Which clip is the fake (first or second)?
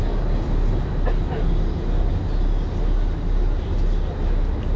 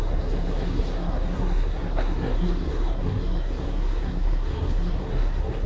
second